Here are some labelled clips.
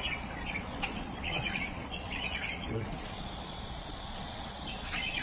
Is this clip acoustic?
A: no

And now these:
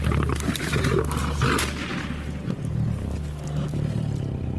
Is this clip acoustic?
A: yes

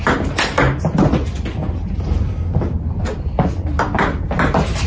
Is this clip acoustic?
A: yes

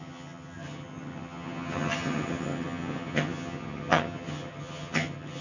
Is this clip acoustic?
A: no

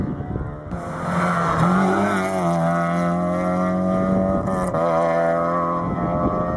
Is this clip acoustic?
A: yes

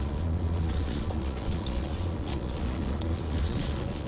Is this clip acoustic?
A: no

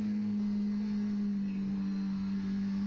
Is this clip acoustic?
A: no